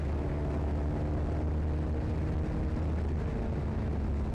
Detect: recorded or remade recorded